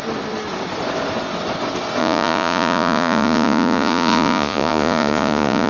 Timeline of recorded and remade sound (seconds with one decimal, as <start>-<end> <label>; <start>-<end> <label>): 0.0-2.0 recorded; 2.0-5.7 remade